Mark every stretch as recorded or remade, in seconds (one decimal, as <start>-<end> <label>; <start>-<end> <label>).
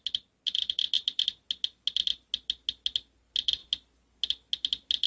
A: 0.0-5.1 recorded